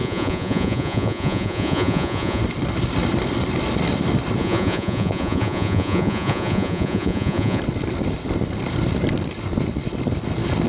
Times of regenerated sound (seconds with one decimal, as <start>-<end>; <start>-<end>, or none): 0.0-2.4; 4.4-7.6

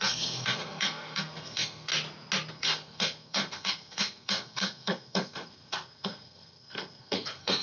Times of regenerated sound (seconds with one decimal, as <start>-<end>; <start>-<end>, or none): 0.0-1.9; 2.5-7.6